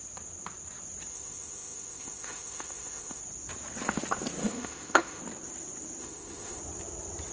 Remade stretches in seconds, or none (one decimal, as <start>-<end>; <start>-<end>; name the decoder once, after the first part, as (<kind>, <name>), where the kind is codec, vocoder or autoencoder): 1.1-3.2 (autoencoder, DAC-VAE); 4.4-5.2; 6.0-6.6

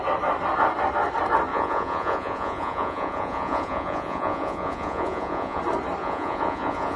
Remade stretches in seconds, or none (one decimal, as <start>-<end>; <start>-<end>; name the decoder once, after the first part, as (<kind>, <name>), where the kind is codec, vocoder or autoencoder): 1.5-5.6 (vocoder, Vocos); 6.0-7.0

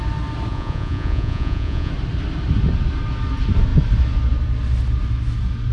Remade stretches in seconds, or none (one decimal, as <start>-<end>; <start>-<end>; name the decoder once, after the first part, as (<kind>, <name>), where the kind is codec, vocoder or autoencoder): 0.5-1.9 (vocoder, Vocos)

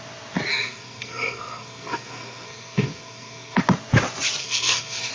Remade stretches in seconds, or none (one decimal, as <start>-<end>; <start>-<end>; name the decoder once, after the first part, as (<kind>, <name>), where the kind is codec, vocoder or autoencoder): 0.5-3.6 (codec, SNAC); 4.4-5.1

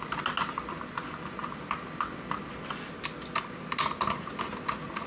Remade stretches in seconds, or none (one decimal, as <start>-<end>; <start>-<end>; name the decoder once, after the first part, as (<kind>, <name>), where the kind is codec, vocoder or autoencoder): none